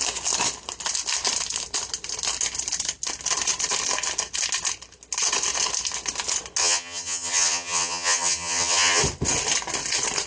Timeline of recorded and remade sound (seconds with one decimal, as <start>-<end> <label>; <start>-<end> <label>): 0.0-6.6 recorded; 6.6-9.0 remade; 9.0-10.3 recorded